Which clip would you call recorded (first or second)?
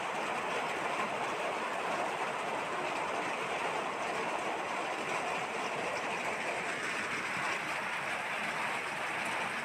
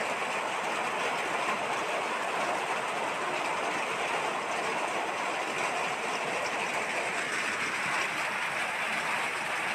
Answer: second